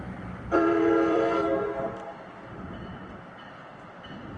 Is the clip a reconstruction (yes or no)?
yes